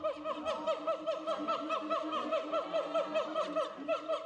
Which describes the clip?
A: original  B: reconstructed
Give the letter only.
A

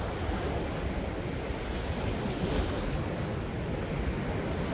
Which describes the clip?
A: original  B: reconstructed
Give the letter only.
A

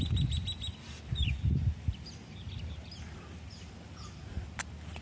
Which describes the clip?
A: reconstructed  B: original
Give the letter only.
B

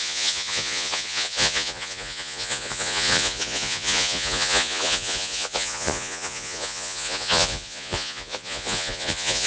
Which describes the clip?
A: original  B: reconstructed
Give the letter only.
B